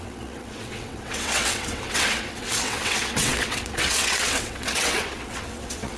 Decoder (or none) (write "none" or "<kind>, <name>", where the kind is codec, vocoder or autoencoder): vocoder, WaveNeXt